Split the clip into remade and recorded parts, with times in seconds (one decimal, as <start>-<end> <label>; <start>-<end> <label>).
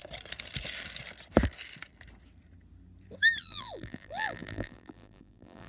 0.0-3.4 recorded; 3.4-5.7 remade